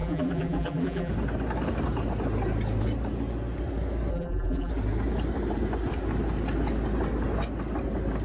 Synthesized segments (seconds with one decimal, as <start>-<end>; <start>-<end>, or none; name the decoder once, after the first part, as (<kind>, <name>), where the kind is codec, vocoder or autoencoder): 0.0-1.1 (vocoder, BigVGAN v2); 4.1-4.7